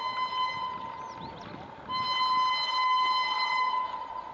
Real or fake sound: real